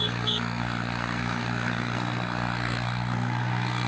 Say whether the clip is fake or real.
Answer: fake